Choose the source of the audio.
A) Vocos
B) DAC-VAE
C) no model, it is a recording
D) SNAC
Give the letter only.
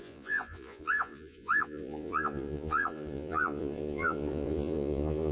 A